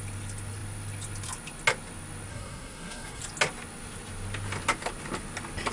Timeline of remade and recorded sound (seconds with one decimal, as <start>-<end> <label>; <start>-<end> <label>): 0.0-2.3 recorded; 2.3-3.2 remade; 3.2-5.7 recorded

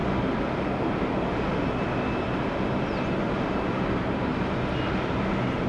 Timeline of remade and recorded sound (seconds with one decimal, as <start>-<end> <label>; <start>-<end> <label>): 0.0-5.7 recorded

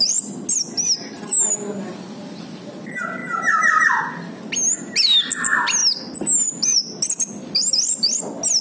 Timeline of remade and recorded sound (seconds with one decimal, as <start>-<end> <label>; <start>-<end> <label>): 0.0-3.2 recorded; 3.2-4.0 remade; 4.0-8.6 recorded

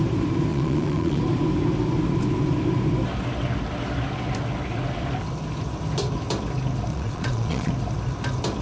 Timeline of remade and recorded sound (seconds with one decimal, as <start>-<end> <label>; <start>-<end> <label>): 0.0-0.5 recorded; 0.5-1.2 remade; 1.2-6.9 recorded; 6.9-7.7 remade; 7.7-8.6 recorded

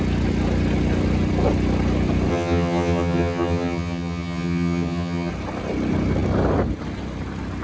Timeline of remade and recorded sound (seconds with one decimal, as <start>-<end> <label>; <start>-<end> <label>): 0.0-2.3 recorded; 2.3-5.3 remade; 5.3-7.6 recorded

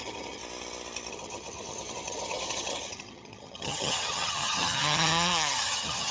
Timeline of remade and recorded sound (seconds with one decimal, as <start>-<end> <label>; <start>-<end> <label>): 0.0-0.4 remade; 0.4-1.1 recorded; 1.1-6.1 remade

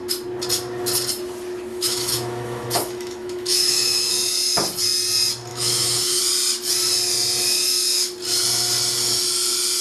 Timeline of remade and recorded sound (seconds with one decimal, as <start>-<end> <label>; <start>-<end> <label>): 0.0-1.7 recorded; 1.7-4.1 remade; 4.1-5.5 recorded; 5.5-6.2 remade; 6.2-9.8 recorded